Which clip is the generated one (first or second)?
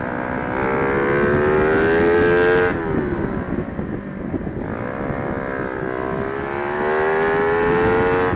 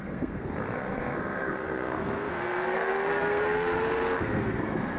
second